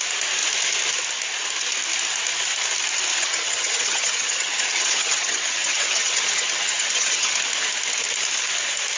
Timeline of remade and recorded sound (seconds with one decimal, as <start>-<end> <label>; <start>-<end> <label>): 0.0-3.1 recorded; 3.1-7.4 remade; 7.4-9.0 recorded